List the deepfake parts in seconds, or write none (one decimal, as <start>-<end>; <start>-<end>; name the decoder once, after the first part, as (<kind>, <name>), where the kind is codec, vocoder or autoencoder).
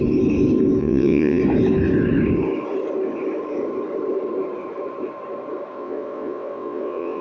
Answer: 0.8-1.4 (vocoder, WaveNeXt); 5.7-7.2